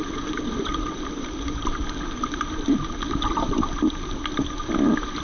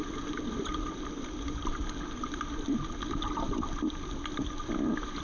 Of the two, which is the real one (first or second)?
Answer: second